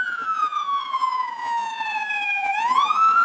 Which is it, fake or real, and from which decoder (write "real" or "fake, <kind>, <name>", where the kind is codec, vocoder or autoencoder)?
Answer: fake, vocoder, Vocos